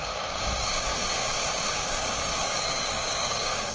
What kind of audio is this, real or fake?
fake